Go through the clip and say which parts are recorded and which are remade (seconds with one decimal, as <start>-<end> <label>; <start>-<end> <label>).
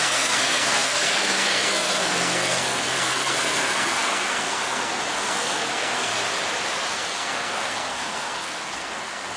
0.0-6.1 remade; 6.1-6.9 recorded; 6.9-9.4 remade